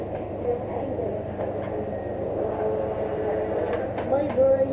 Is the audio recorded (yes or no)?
yes